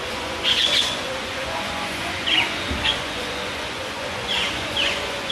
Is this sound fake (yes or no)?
yes